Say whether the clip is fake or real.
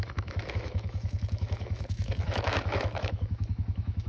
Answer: fake